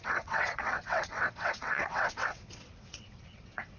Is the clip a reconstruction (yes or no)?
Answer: yes